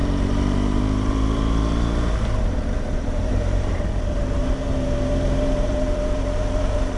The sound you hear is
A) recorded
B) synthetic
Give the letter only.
B